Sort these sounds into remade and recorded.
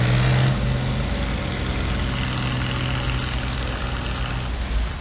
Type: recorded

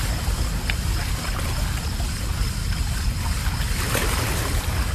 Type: recorded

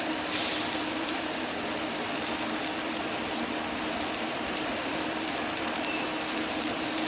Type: remade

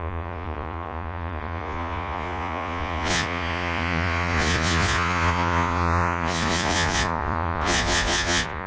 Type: remade